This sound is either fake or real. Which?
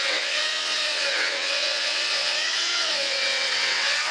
fake